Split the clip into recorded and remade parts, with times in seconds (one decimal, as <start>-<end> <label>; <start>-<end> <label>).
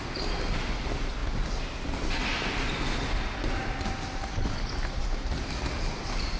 0.0-6.4 recorded